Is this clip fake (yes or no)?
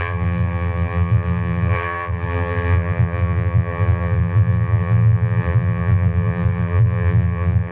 yes